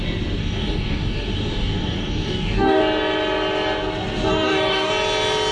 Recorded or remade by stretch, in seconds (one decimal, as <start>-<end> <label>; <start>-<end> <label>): 0.0-0.4 recorded; 0.4-2.8 remade; 2.8-4.3 recorded; 4.3-4.9 remade; 4.9-5.5 recorded